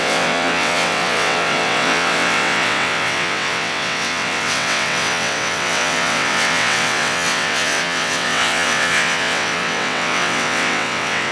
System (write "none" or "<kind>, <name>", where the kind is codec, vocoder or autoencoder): vocoder, WaveNeXt